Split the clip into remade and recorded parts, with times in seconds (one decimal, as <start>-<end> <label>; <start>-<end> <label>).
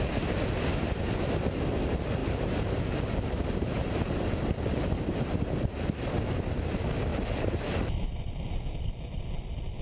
0.0-2.2 recorded; 2.2-5.4 remade; 5.4-7.1 recorded; 7.1-8.5 remade; 8.5-9.8 recorded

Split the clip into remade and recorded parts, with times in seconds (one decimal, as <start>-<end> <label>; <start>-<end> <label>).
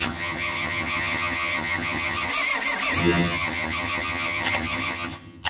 0.0-2.3 remade; 2.3-3.0 recorded; 3.0-5.5 remade